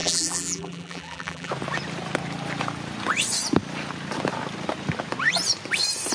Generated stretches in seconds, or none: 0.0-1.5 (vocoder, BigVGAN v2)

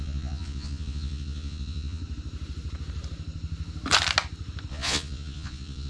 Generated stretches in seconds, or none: 0.0-2.0 (vocoder, Vocos); 4.7-5.9

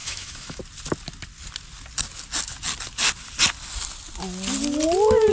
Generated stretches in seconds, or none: 0.0-0.6 (autoencoder, DAC-VAE)

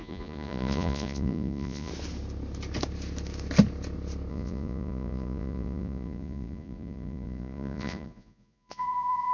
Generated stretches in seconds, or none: 0.0-1.9 (vocoder, Vocos); 4.3-9.3

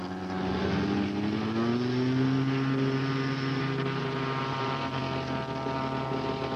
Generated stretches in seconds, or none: 4.0-5.0 (vocoder, BigVGAN v2)

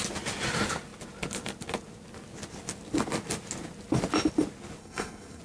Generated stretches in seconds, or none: 4.8-5.4 (codec, SNAC)

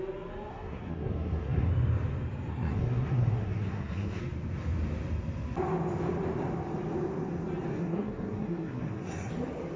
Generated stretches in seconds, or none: 0.5-1.7 (codec, SNAC); 2.5-4.2; 7.7-9.3

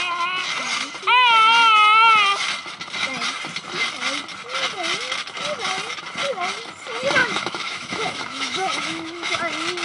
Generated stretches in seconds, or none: 7.2-9.4 (autoencoder, DAC-VAE)